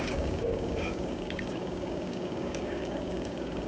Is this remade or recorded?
remade